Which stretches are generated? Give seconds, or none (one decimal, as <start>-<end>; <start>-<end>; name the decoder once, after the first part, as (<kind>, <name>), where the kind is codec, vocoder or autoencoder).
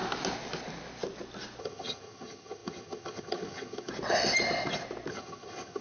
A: 1.6-3.9 (vocoder, HiFi-GAN); 5.1-5.8